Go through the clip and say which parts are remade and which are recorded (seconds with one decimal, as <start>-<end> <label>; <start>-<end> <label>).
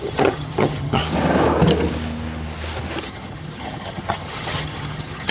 0.0-1.0 remade; 1.0-3.0 recorded; 3.0-5.3 remade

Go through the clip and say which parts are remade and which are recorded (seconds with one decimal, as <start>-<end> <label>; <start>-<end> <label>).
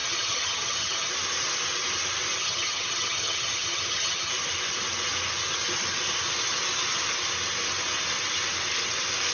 0.0-1.1 remade; 1.1-2.4 recorded; 2.4-4.3 remade; 4.3-9.3 recorded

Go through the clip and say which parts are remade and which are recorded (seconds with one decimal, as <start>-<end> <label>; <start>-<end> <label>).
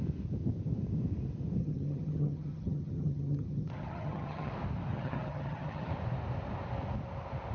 0.0-1.6 recorded; 1.6-4.5 remade; 4.5-4.9 recorded; 4.9-5.9 remade; 5.9-7.5 recorded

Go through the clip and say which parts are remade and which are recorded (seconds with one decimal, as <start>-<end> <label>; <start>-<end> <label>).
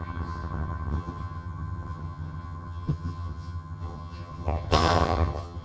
0.0-5.6 remade